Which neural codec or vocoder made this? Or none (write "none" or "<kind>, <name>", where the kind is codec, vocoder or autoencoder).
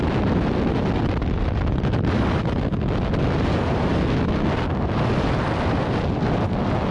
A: none